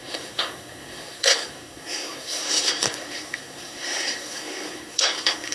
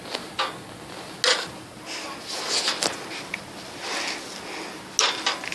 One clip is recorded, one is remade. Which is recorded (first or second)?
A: second